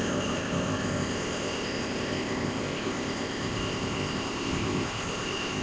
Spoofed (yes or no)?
yes